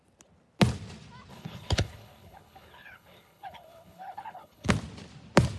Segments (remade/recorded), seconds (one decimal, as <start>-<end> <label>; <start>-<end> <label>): 0.0-1.3 recorded; 1.3-4.7 remade; 4.7-5.6 recorded